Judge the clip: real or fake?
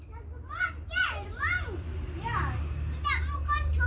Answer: real